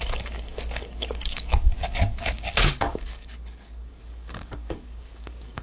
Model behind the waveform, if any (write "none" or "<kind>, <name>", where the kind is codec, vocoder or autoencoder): codec, DAC